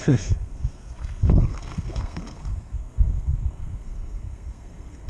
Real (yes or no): no